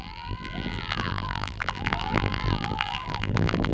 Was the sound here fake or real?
fake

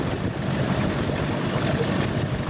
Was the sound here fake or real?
real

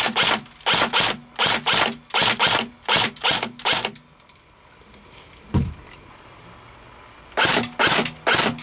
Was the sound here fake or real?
real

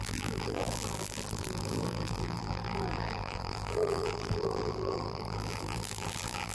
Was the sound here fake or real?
fake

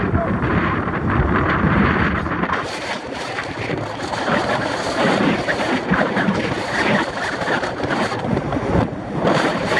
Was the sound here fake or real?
fake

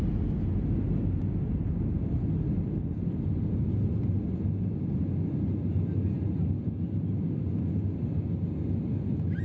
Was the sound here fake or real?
real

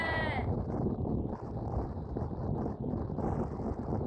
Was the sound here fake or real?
real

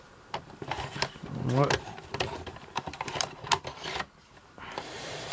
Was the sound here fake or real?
fake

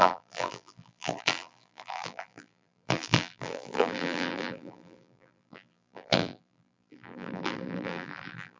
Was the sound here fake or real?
fake